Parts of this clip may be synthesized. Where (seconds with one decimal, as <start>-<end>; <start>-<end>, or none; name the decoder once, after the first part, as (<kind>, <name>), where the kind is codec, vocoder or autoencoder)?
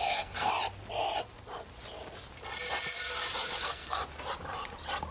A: 0.0-0.5 (codec, SNAC); 3.6-4.0